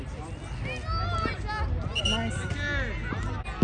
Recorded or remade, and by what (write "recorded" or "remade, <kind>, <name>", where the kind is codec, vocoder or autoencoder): recorded